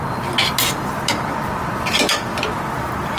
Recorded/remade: recorded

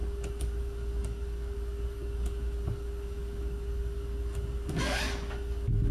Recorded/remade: remade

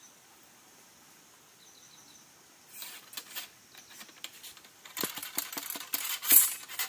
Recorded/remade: recorded